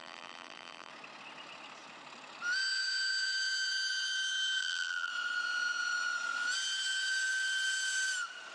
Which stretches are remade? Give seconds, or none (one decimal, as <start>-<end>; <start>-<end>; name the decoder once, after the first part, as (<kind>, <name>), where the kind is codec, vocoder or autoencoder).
0.0-0.9 (vocoder, BigVGAN v2); 4.6-5.1